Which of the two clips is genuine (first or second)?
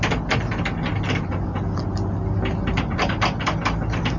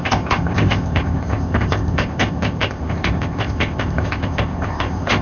first